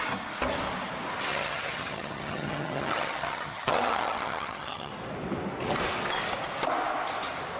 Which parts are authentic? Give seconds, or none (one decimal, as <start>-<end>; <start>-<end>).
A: 0.0-1.3; 4.9-7.6